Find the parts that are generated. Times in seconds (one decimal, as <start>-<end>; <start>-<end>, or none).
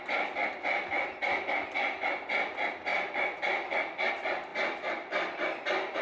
none